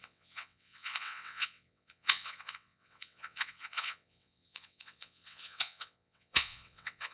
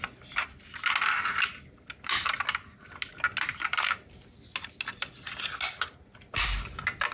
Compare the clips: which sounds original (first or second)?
second